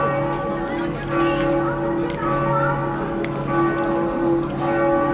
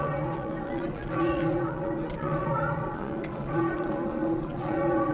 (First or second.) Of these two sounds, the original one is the first